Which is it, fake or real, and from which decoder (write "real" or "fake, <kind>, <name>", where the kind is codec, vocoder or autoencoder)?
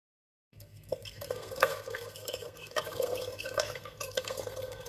fake, codec, SNAC